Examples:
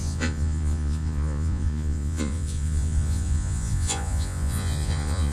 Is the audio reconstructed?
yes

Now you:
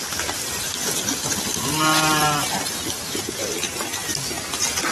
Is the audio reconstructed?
no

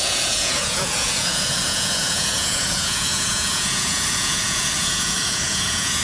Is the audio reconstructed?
yes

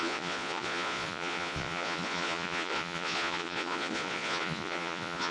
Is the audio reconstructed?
yes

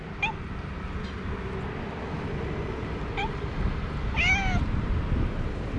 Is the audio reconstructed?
no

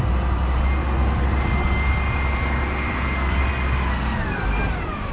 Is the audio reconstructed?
no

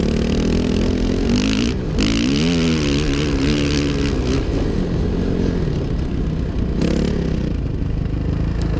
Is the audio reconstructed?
no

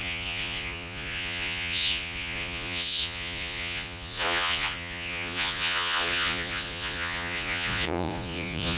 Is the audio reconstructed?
yes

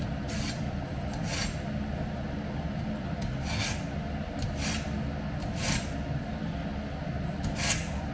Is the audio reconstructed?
no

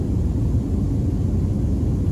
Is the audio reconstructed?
no